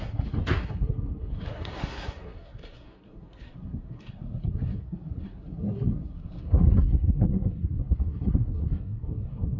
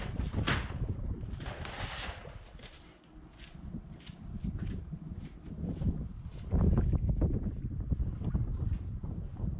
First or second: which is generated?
first